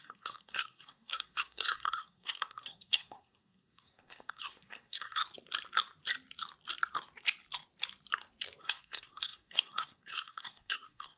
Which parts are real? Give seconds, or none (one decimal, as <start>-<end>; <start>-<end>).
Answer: 5.2-8.6